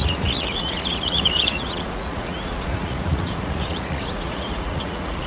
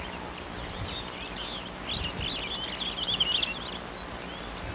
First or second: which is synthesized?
first